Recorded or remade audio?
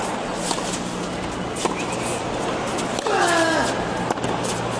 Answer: recorded